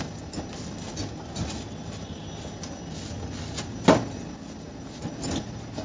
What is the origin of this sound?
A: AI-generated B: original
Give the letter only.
B